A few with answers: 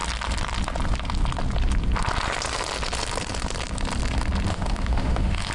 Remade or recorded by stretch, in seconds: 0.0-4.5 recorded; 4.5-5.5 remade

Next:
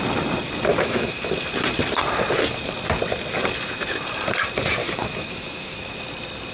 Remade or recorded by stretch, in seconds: 0.0-0.7 recorded; 0.7-1.3 remade; 1.3-4.8 recorded; 4.8-5.9 remade; 5.9-6.5 recorded

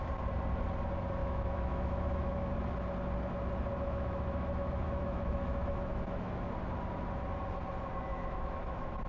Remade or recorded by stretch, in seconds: 0.0-1.2 recorded; 1.2-2.5 remade; 2.5-3.7 recorded; 3.7-6.3 remade; 6.3-8.1 recorded; 8.1-9.1 remade

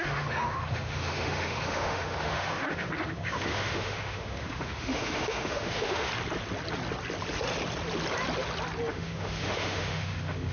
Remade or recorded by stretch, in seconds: 0.0-6.1 remade; 6.1-8.9 recorded; 8.9-10.5 remade

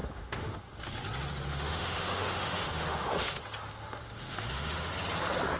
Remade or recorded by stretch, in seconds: 0.0-1.0 remade; 1.0-1.5 recorded; 1.5-4.9 remade; 4.9-5.6 recorded

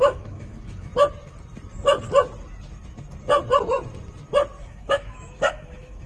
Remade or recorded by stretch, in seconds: 0.0-0.9 remade; 0.9-4.6 recorded; 4.6-6.1 remade

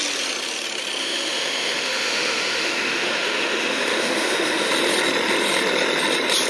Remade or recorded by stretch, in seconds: 0.0-1.0 recorded; 1.0-4.7 remade; 4.7-6.5 recorded